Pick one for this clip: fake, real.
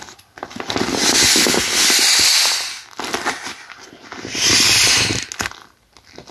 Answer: real